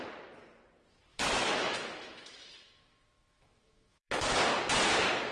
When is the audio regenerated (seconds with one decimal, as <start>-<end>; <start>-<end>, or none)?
1.1-4.3